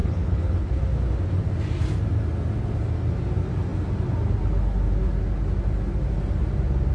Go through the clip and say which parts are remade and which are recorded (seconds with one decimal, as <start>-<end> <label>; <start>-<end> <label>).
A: 0.0-0.8 remade; 0.8-6.9 recorded